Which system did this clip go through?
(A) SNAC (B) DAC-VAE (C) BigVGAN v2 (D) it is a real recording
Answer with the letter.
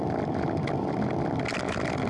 D